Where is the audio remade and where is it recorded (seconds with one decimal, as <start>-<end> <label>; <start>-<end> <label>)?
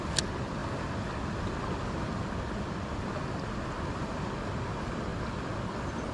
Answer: 0.0-6.1 recorded